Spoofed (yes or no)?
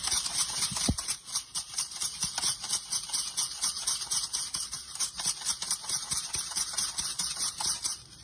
yes